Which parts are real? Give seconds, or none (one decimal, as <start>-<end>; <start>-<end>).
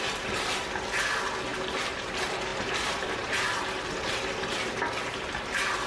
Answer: 0.0-1.5; 2.1-2.5; 3.8-5.9